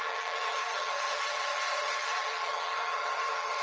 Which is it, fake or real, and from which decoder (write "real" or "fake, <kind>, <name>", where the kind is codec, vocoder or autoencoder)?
fake, vocoder, HiFi-GAN